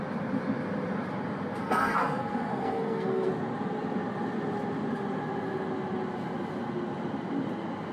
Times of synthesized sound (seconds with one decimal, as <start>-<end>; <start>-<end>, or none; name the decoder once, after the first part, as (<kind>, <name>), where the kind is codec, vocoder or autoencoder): 1.6-3.3 (codec, SNAC)